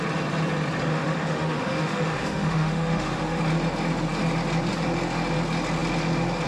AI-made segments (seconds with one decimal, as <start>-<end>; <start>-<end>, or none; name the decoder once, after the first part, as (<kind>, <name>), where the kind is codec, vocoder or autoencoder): 0.9-3.4 (autoencoder, DAC-VAE)